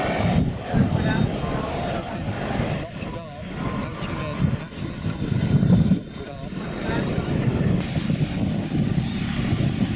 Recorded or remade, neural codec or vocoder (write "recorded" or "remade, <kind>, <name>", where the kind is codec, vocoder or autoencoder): recorded